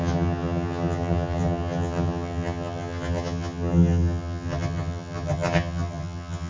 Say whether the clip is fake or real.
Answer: fake